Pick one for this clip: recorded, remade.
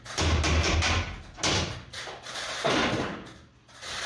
recorded